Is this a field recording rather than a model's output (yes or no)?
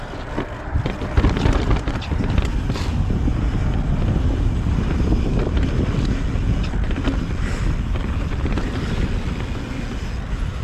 yes